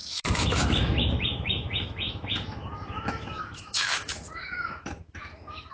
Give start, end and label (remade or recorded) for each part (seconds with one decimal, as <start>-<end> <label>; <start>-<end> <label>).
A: 0.0-5.7 remade